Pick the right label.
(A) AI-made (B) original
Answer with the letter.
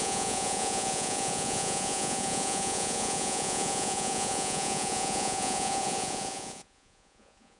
A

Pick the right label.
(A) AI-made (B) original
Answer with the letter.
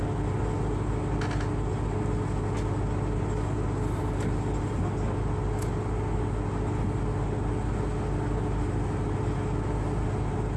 B